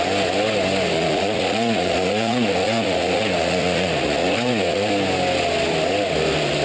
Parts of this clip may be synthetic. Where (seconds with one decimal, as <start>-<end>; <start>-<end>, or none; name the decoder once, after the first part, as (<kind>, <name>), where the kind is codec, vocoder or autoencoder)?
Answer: 0.9-4.9 (vocoder, Vocos)